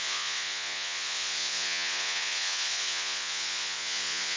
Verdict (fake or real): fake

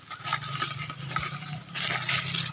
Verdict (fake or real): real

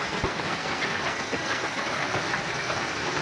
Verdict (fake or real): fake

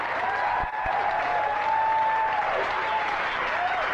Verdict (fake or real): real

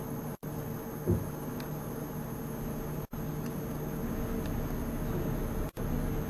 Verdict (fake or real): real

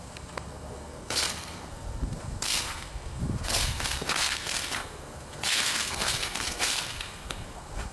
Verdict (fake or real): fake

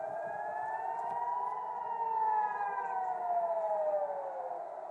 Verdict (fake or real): real